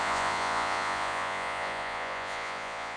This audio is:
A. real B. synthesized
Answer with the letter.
B